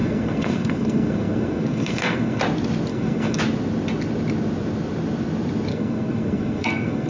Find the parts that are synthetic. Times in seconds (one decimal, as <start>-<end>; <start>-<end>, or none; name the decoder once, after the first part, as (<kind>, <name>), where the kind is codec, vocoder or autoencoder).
0.0-2.4 (codec, SNAC); 2.9-3.4; 5.7-7.1